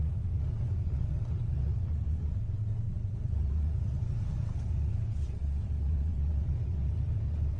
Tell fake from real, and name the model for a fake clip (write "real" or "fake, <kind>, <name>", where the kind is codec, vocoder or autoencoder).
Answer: fake, vocoder, WaveNeXt